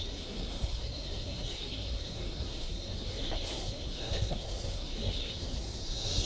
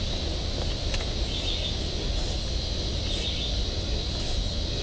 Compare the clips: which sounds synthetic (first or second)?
first